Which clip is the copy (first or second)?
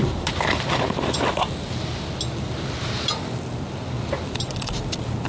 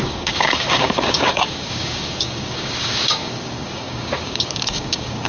second